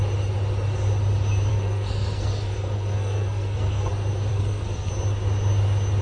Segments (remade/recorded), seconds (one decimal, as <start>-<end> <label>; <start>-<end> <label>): 0.0-1.5 recorded; 1.5-3.9 remade; 3.9-4.3 recorded; 4.3-4.9 remade; 4.9-6.0 recorded